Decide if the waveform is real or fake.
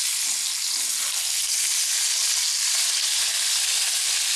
real